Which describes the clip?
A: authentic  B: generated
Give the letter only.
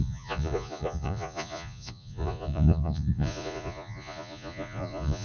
B